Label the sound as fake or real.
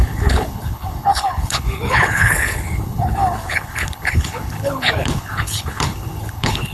fake